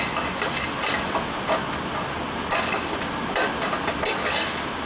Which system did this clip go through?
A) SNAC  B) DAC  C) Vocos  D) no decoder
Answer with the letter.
D